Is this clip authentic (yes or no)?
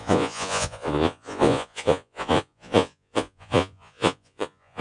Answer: no